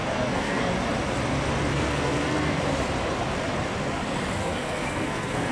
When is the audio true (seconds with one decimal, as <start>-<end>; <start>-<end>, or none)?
0.7-1.7; 2.6-4.4